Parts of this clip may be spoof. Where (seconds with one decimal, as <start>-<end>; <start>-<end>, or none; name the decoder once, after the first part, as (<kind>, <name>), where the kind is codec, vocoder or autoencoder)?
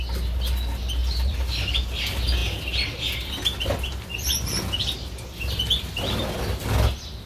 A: none